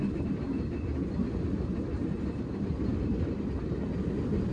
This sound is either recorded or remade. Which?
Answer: recorded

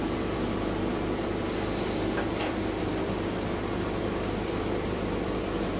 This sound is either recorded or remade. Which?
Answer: remade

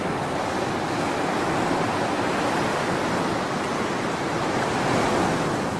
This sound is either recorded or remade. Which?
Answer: recorded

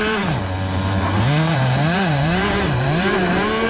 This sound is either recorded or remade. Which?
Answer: remade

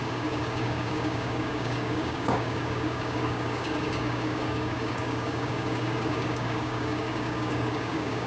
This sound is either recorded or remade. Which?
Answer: remade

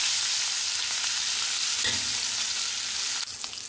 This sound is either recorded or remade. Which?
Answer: recorded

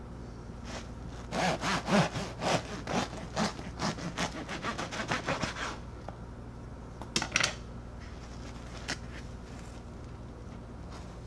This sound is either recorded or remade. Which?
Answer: recorded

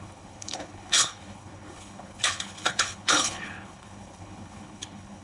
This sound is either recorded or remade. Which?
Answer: remade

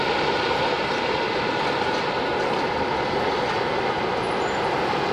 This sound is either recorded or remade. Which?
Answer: recorded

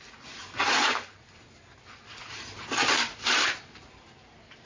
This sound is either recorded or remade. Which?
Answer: remade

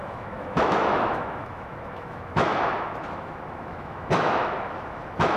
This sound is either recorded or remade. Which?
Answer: remade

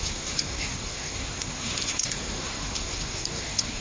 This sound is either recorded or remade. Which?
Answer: remade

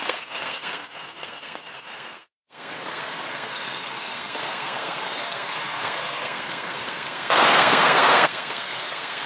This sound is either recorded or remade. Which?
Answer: remade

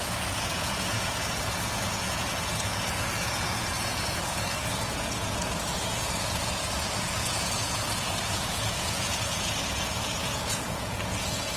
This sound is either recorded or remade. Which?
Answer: remade